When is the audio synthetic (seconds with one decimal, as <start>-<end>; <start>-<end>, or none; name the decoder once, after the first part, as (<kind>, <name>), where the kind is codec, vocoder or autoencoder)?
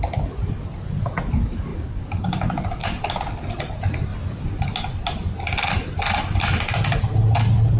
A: none